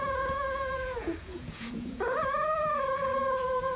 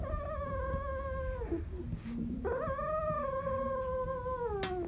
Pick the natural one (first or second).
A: second